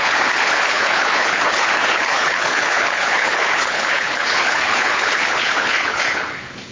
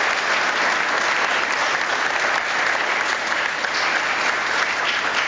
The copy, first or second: first